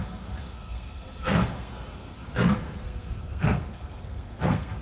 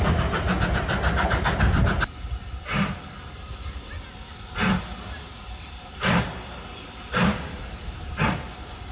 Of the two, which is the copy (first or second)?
first